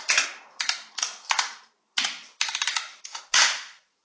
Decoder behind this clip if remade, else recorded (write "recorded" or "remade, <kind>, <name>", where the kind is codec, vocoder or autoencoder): recorded